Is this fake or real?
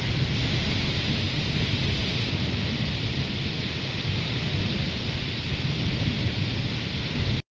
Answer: real